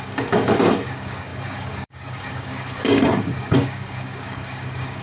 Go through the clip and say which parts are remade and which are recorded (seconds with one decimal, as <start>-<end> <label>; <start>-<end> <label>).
0.0-5.0 remade